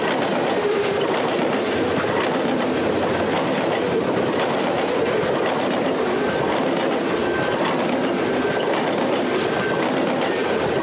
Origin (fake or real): real